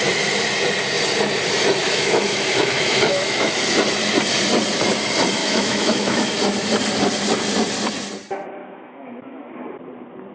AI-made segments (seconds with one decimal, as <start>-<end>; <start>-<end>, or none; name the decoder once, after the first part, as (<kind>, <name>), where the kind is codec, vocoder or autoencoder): 1.8-3.5 (autoencoder, DAC-VAE); 5.4-6.3; 8.6-9.5